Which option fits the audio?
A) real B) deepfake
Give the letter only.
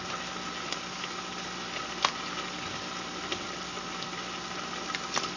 A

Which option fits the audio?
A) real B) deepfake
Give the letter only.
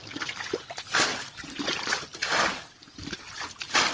A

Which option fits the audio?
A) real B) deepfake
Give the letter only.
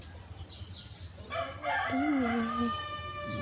A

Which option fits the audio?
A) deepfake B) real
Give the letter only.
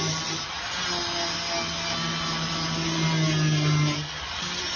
B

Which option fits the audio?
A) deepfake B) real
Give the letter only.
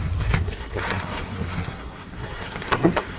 A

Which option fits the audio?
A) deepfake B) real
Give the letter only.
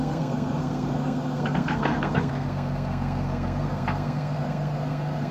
A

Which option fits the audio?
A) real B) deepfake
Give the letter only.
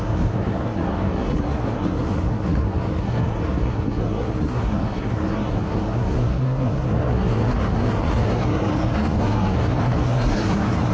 B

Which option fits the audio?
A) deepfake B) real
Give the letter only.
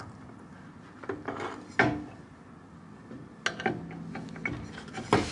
B